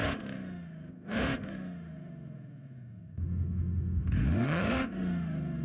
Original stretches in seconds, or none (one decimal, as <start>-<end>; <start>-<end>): none